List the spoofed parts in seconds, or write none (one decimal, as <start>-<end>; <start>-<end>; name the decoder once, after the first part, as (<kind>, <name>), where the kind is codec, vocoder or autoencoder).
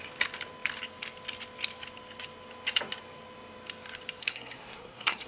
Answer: 4.2-5.3 (codec, SNAC)